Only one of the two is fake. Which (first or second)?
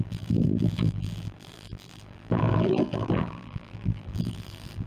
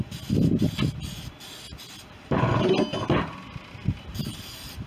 first